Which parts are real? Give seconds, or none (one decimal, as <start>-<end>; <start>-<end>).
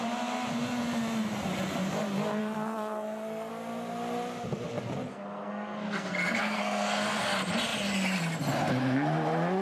0.0-2.4; 3.5-5.1; 7.3-9.6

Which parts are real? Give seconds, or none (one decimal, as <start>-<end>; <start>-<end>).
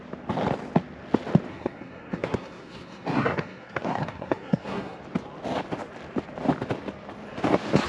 0.0-1.5; 5.0-7.9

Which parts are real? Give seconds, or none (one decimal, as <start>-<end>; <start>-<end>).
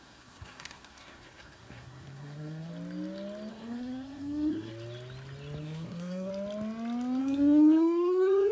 2.7-3.5; 4.7-5.6; 6.3-7.2